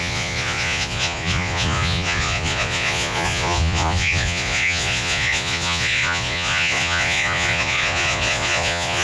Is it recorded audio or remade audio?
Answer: remade